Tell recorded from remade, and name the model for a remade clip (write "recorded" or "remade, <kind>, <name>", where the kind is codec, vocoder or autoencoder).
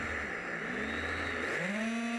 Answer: recorded